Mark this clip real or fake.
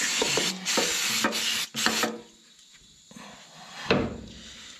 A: real